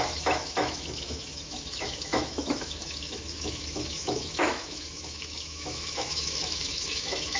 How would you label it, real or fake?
fake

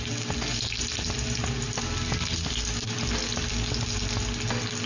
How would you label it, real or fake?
real